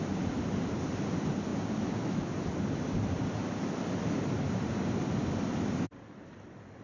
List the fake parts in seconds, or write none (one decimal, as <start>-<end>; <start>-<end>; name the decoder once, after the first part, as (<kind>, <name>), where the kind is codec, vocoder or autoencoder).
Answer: none